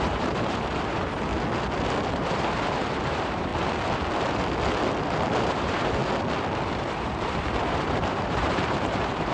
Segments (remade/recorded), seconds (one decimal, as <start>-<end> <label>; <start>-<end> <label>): 0.0-1.3 remade; 1.3-2.1 recorded; 2.1-3.5 remade; 3.5-5.4 recorded; 5.4-6.0 remade; 6.0-6.7 recorded; 6.7-9.3 remade